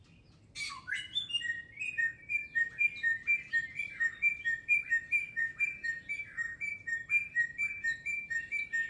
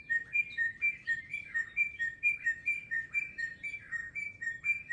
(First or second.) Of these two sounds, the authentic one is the first